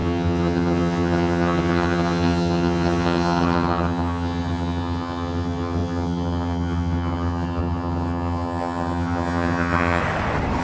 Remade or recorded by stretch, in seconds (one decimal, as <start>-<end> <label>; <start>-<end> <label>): 0.0-10.0 remade; 10.0-10.6 recorded